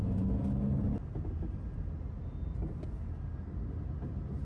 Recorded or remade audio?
recorded